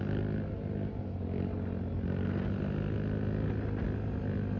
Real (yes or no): yes